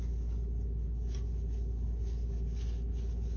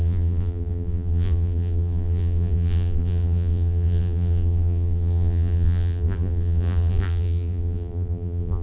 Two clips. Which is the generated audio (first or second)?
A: second